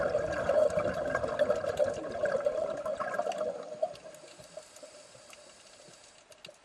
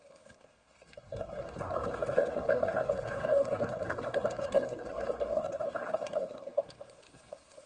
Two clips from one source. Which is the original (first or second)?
first